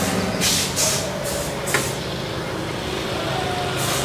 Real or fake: real